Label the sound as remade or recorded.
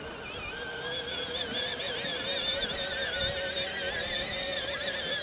recorded